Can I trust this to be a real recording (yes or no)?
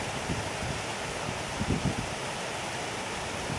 yes